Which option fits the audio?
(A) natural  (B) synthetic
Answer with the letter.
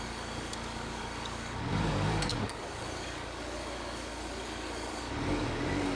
B